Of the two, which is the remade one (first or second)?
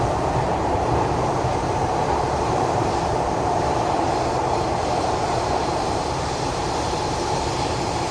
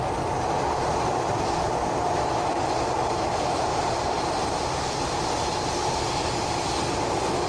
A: first